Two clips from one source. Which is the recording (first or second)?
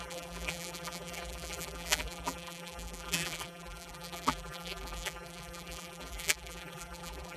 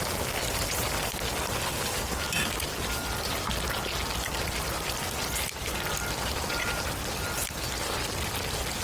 second